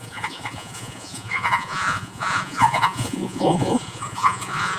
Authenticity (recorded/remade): remade